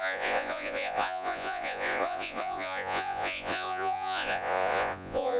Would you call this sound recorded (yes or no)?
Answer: no